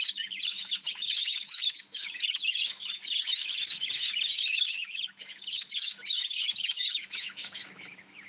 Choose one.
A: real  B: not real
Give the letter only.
B